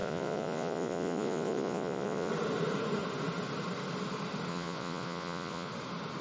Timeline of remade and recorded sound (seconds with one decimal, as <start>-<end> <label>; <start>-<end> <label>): 0.0-2.3 remade; 2.3-4.5 recorded; 4.5-5.7 remade; 5.7-6.2 recorded